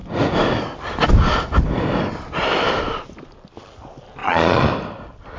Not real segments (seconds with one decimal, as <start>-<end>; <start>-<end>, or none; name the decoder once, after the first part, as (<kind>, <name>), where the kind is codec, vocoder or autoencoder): 4.2-4.7 (vocoder, Vocos)